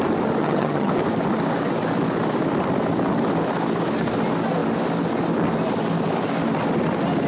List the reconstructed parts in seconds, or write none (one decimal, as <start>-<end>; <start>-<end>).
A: 0.4-0.9